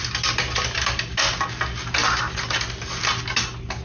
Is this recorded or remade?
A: recorded